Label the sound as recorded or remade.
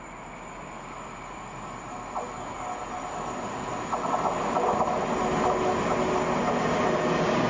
recorded